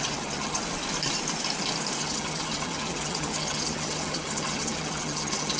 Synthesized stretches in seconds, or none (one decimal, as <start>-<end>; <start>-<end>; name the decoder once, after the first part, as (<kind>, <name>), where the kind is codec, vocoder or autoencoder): 0.0-0.6 (vocoder, HiFi-GAN); 2.0-5.6